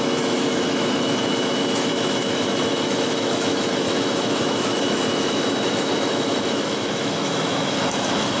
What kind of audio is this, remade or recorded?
remade